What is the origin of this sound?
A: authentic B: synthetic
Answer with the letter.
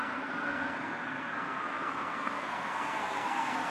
B